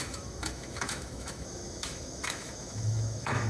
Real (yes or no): no